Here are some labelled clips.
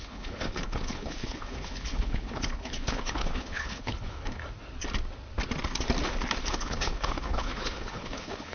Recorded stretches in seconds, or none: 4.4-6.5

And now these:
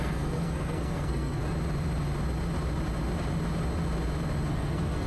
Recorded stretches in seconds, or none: 1.4-4.5

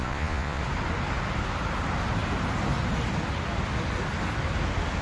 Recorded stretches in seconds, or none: 0.6-5.0

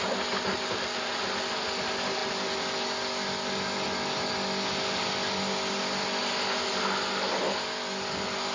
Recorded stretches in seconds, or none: 0.0-8.5

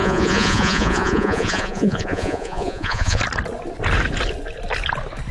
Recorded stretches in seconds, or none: 3.2-5.3

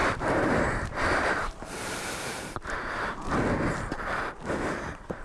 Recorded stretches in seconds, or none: 3.1-5.2

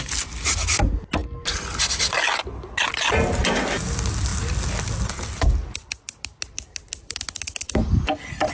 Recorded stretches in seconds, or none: 0.0-8.5